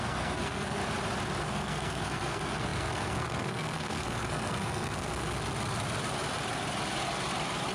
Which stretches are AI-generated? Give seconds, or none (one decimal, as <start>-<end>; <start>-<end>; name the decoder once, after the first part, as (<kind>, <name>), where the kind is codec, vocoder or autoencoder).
0.0-0.8 (codec, SNAC); 1.4-5.2